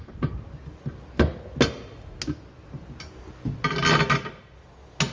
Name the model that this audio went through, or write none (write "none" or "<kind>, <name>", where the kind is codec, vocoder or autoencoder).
none